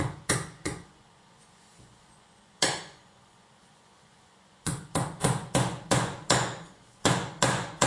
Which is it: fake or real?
fake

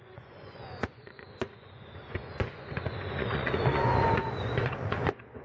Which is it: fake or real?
fake